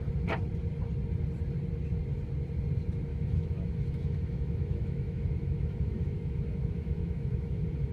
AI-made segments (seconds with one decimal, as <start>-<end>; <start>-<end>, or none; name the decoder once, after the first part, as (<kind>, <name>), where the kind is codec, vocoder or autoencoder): 3.1-7.9 (autoencoder, DAC-VAE)